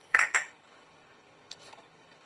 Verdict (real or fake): fake